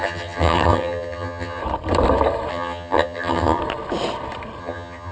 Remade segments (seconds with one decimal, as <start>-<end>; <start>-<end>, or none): 0.0-1.6; 2.5-3.6; 4.6-5.1